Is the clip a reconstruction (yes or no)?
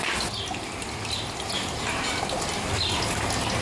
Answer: no